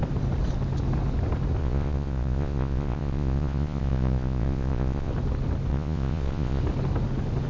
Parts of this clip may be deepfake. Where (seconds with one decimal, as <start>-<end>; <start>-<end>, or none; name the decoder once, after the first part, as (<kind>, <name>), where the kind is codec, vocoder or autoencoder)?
1.6-5.1 (vocoder, Vocos); 5.7-6.6